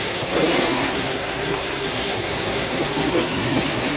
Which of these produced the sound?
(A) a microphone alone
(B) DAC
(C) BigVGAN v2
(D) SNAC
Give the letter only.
D